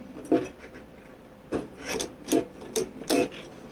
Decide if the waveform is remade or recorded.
recorded